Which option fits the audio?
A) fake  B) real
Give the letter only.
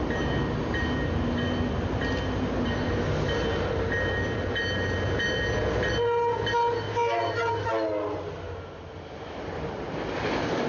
B